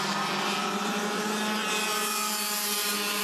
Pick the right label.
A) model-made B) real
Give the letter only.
B